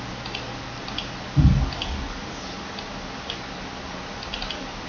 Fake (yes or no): no